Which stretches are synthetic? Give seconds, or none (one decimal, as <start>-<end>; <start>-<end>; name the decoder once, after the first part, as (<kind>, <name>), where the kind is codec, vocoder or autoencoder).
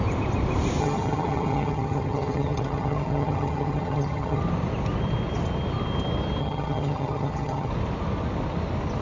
0.8-4.4 (vocoder, HiFi-GAN); 6.4-7.7